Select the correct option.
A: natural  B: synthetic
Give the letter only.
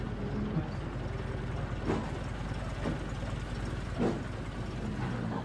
A